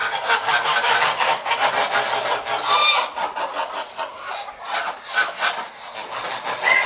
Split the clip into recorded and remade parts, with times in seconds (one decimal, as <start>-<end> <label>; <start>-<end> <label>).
0.0-1.7 remade; 1.7-6.9 recorded